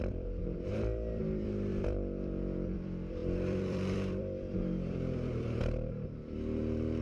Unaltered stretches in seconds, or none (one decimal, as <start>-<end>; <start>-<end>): none

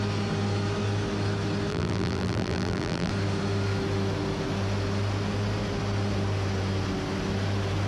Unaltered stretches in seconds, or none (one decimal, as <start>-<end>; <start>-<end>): 0.0-1.7; 3.1-7.9

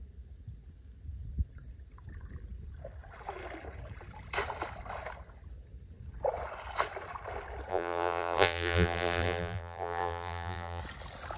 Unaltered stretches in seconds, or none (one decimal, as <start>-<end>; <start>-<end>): 0.0-7.7; 10.8-11.4

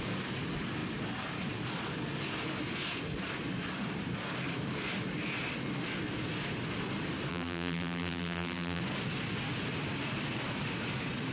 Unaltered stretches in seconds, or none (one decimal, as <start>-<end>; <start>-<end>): 0.0-7.3; 8.8-11.3